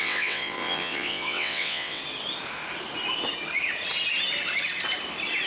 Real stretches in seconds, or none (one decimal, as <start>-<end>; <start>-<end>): 2.0-5.5